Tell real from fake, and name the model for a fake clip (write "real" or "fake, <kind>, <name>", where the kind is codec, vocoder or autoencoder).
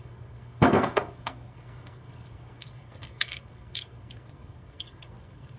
fake, codec, SNAC